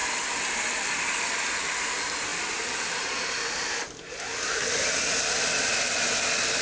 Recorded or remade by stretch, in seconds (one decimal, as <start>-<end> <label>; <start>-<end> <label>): 0.0-1.5 remade; 1.5-6.6 recorded